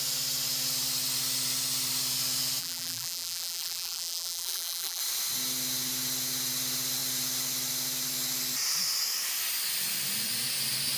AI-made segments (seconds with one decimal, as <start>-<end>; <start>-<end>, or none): 2.6-5.0